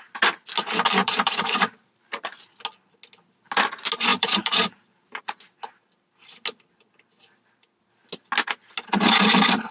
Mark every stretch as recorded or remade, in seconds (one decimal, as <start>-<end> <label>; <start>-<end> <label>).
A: 0.0-1.0 recorded; 1.0-2.4 remade; 2.4-4.1 recorded; 4.1-5.2 remade; 5.2-9.7 recorded